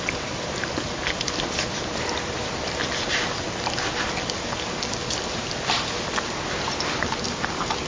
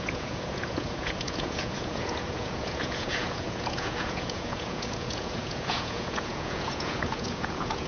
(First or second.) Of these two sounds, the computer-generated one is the second